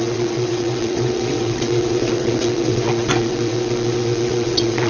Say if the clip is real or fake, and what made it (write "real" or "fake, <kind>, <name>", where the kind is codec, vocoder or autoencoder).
fake, vocoder, WaveNeXt